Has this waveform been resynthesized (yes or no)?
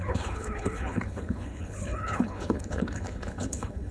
yes